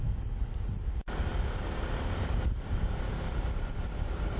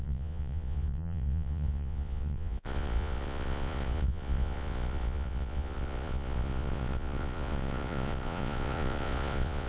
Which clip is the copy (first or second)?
second